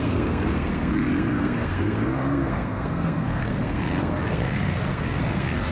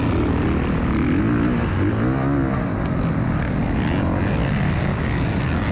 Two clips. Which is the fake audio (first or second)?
first